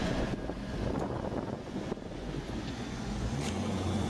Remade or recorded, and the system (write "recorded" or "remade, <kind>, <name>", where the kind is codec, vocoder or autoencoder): remade, vocoder, Vocos